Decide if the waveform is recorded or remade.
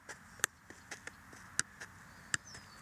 recorded